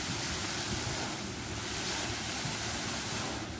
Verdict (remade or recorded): recorded